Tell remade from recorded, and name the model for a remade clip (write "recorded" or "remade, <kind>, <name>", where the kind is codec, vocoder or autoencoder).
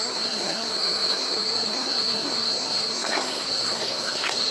remade, codec, SNAC